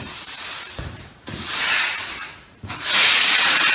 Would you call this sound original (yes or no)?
no